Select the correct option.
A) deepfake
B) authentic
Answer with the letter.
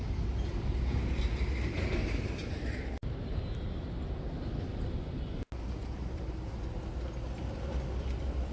B